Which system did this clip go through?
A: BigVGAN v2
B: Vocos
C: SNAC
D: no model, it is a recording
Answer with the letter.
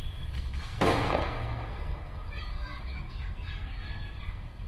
C